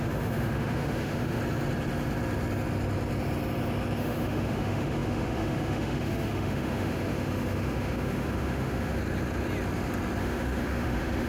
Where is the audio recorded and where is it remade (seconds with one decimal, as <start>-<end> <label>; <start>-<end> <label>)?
0.0-1.4 remade; 1.4-4.0 recorded; 4.0-9.0 remade; 9.0-10.2 recorded; 10.2-11.3 remade